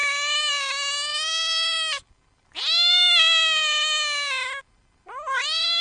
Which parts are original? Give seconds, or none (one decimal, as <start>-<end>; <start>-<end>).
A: 0.0-5.8